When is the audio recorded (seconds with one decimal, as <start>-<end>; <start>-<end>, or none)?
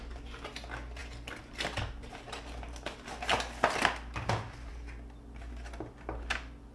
0.0-6.7